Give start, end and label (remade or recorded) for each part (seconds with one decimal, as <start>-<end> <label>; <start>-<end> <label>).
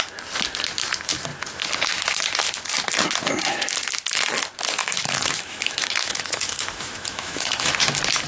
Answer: 0.0-4.8 recorded; 4.8-7.7 remade; 7.7-8.3 recorded